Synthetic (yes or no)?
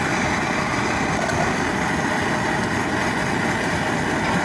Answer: no